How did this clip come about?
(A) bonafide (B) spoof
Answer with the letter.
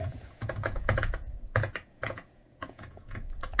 B